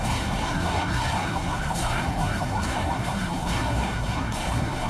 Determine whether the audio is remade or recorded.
remade